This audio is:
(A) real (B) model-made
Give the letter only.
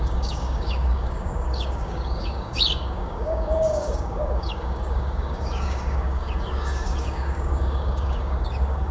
B